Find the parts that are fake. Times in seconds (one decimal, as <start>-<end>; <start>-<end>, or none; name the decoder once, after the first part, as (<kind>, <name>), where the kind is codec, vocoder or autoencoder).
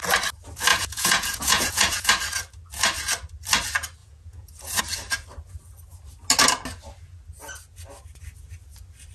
0.7-2.1 (vocoder, Vocos); 4.0-4.8